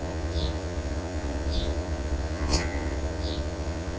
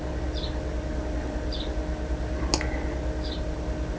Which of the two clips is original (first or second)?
second